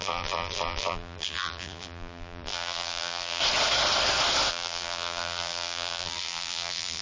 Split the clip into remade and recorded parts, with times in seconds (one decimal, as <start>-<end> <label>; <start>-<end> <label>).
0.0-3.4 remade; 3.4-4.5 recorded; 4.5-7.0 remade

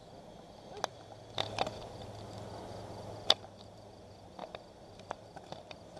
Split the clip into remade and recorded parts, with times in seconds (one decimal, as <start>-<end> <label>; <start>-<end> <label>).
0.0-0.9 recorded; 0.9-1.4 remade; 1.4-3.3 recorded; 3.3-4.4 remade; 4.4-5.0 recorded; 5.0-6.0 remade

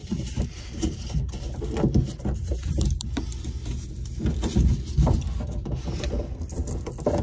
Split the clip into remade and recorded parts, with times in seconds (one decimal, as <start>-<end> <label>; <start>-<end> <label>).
0.0-3.2 remade; 3.2-4.5 recorded; 4.5-6.1 remade; 6.1-7.2 recorded

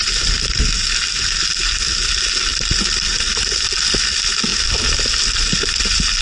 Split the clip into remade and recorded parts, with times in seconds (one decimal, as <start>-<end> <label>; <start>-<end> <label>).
0.0-2.5 recorded; 2.5-3.8 remade; 3.8-6.2 recorded

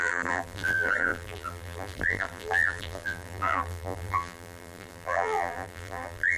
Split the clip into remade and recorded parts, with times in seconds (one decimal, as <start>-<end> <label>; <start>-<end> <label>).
0.0-6.4 remade